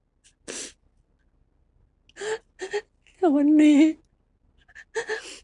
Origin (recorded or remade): recorded